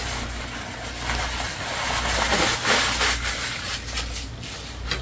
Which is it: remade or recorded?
recorded